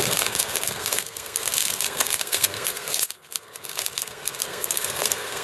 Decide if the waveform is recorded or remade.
remade